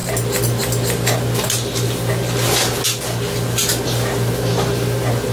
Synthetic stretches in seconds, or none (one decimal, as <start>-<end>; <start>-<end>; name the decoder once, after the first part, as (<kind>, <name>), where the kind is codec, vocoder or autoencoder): none